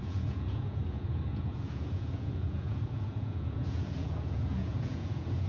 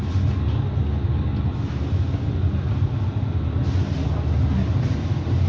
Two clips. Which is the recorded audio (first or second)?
second